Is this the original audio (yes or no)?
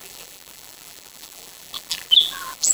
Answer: no